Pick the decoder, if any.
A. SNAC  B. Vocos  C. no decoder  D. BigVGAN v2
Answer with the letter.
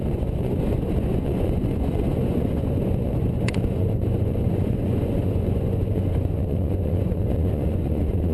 B